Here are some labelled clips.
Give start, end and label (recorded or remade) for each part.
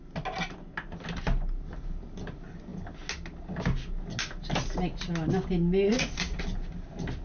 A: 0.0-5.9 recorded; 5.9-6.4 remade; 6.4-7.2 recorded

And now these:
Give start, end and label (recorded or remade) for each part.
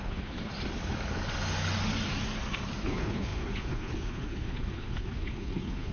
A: 0.0-0.5 remade; 0.5-2.8 recorded; 2.8-5.9 remade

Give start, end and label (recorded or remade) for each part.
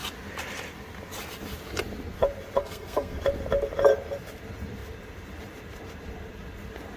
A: 0.0-2.6 recorded; 2.6-3.2 remade; 3.2-7.0 recorded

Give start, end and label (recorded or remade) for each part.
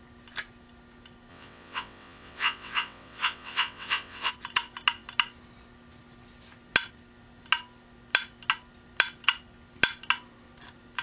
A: 0.0-1.3 recorded; 1.3-4.3 remade; 4.3-11.0 recorded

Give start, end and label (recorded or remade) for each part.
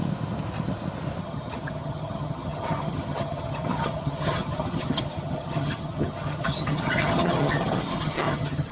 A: 0.0-1.2 recorded; 1.2-8.7 remade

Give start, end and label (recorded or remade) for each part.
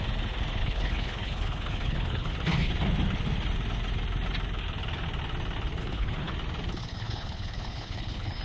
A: 0.0-0.6 recorded; 0.6-2.7 remade; 2.7-5.8 recorded; 5.8-6.3 remade; 6.3-6.8 recorded; 6.8-8.4 remade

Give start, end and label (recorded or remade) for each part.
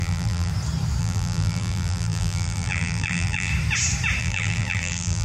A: 0.0-0.5 remade; 0.5-1.0 recorded; 1.0-3.5 remade; 3.5-4.2 recorded; 4.2-5.2 remade